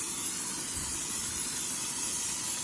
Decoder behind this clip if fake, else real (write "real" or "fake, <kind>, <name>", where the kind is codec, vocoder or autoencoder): real